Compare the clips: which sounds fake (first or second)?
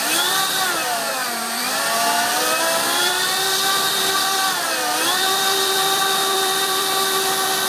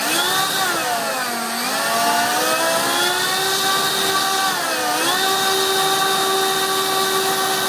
first